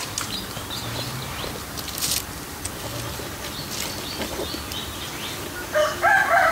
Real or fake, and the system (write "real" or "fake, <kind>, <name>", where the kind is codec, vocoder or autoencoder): real